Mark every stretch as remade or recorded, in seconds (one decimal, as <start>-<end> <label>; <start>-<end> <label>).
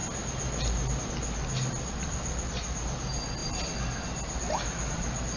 0.0-5.4 recorded